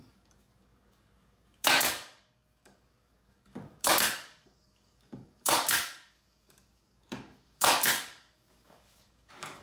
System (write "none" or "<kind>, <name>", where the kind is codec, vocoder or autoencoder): codec, DAC